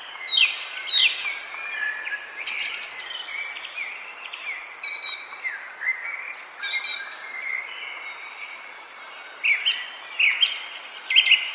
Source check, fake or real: real